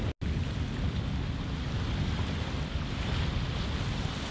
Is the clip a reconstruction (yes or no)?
no